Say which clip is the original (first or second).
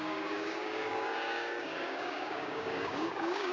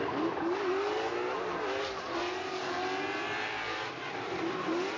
second